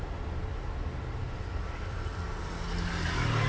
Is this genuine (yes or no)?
yes